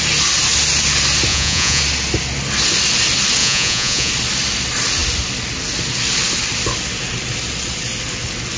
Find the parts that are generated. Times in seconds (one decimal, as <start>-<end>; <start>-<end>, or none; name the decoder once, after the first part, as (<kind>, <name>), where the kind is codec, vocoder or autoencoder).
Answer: 1.3-1.8 (vocoder, Vocos); 3.4-4.1